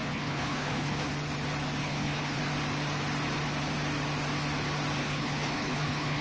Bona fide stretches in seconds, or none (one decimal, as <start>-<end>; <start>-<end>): 1.1-1.8; 2.4-5.0